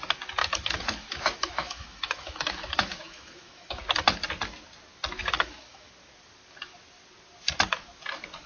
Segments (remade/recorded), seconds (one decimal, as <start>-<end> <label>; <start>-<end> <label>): 0.0-0.4 recorded; 0.4-3.8 remade; 3.8-5.2 recorded; 5.2-5.9 remade; 5.9-8.5 recorded